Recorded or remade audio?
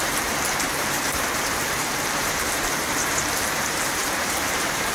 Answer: remade